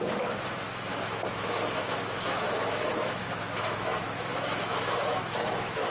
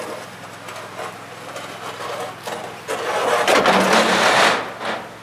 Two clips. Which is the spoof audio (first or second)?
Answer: first